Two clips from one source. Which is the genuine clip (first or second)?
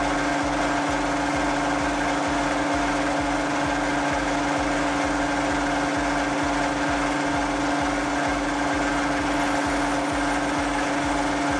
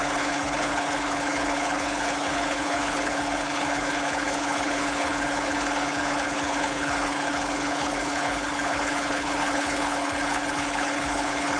first